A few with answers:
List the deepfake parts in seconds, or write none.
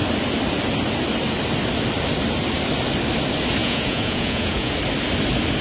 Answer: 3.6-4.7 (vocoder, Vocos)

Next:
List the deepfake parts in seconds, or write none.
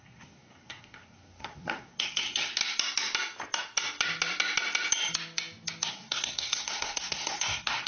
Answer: 0.0-2.5 (codec, SNAC); 5.9-7.9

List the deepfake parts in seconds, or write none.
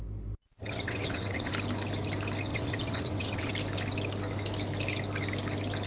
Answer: 0.6-1.5 (vocoder, WaveNeXt); 2.5-3.5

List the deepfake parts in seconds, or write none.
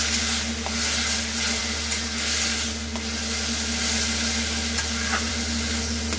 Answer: none